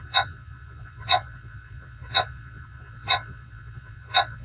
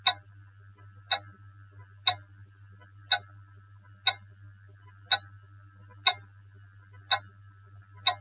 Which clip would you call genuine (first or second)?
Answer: second